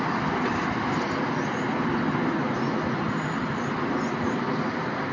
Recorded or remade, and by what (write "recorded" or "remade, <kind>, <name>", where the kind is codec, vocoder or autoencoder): recorded